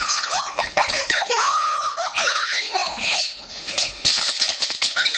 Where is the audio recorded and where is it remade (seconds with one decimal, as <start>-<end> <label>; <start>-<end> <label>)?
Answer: 0.0-5.2 remade